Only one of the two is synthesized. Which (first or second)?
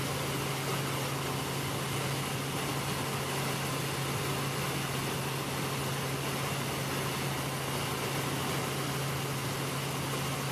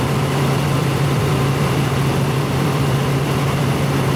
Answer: second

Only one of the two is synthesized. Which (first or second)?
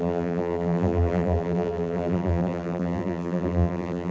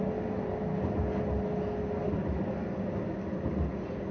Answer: first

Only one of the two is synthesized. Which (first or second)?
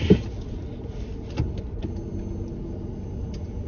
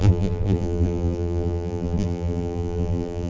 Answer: second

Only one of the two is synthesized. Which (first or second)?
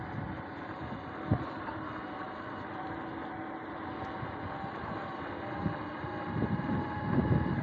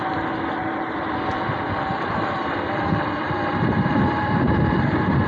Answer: second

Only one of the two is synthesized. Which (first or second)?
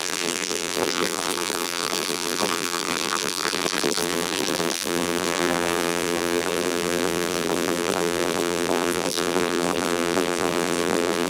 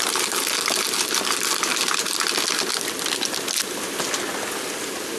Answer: first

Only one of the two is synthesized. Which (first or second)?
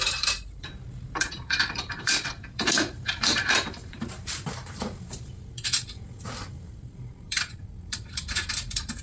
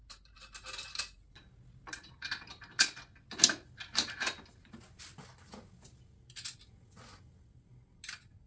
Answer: first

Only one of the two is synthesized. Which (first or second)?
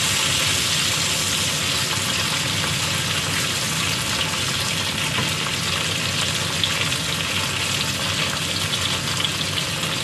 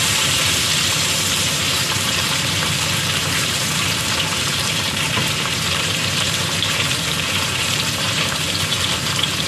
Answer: second